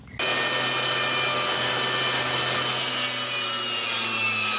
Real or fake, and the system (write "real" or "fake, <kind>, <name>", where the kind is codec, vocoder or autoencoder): real